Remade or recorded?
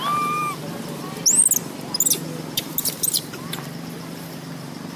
recorded